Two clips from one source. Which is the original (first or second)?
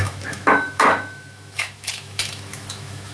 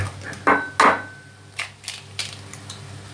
second